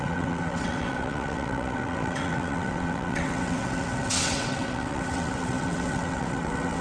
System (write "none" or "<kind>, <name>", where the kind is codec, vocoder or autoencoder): vocoder, WaveNeXt